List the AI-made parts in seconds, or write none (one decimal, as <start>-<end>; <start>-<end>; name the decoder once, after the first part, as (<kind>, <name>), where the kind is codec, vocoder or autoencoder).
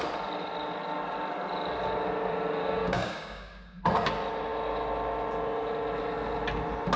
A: 2.6-3.8 (codec, DAC)